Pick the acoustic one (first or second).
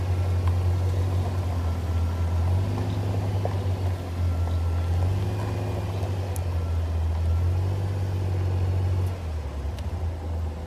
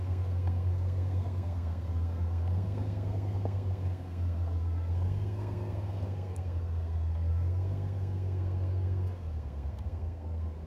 first